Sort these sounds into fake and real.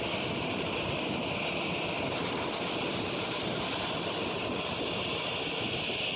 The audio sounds real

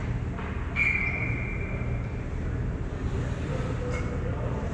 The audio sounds real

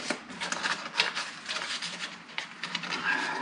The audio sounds fake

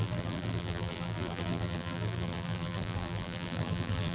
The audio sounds fake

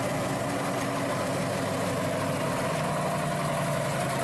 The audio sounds real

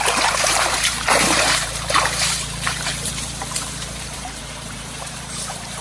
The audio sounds fake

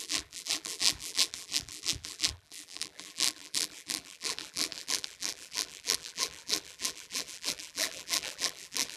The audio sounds fake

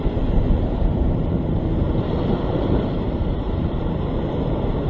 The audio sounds fake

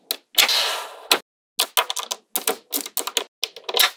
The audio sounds real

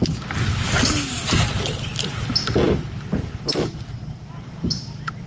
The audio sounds real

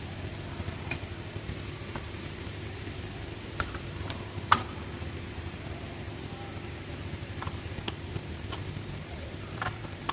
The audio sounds fake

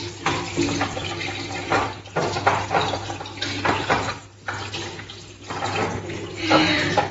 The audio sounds real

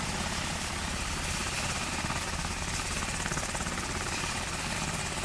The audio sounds fake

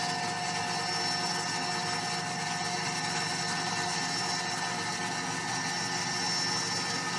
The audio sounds real